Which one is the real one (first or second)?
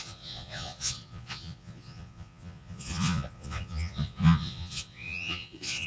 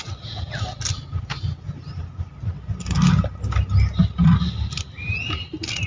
second